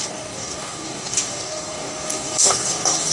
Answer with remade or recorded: remade